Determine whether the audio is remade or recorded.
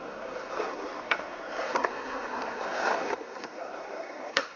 remade